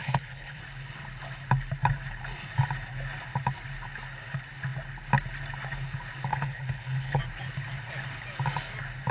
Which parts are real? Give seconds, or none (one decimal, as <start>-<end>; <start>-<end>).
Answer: 0.6-6.3; 7.2-9.1